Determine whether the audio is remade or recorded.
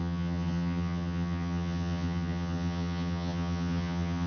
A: remade